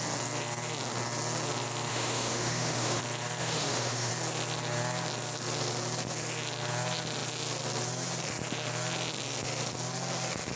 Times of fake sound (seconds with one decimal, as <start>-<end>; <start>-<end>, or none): 1.9-3.0; 3.4-4.1